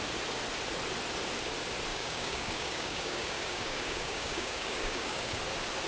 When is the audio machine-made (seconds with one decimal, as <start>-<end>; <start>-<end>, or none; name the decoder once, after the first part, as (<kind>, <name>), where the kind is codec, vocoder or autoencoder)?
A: 1.9-5.4 (codec, DAC)